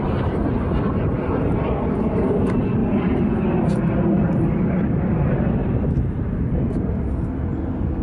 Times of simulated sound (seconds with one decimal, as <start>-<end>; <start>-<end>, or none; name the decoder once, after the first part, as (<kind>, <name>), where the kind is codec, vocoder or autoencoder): 2.8-3.3 (vocoder, BigVGAN v2); 5.6-7.0